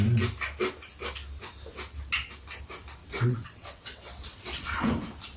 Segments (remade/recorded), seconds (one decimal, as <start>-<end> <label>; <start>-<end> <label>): 0.0-3.0 recorded; 3.0-4.9 remade; 4.9-5.4 recorded